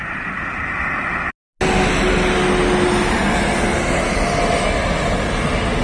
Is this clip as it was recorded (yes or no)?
yes